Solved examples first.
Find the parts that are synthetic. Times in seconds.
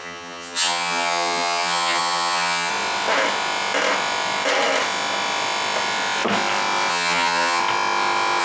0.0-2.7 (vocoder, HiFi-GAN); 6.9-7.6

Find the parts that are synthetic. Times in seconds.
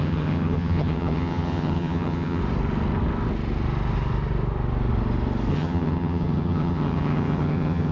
0.0-2.4 (vocoder, HiFi-GAN); 5.5-7.9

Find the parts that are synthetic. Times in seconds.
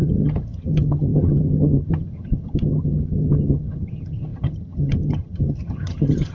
0.0-6.3 (vocoder, HiFi-GAN)